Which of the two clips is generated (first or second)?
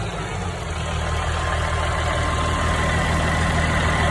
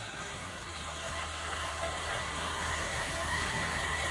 second